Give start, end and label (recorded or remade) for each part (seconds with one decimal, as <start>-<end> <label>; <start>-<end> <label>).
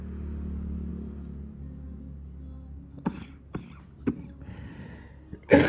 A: 0.0-5.7 recorded